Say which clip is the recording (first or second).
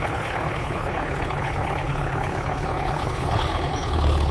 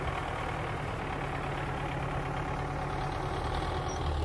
second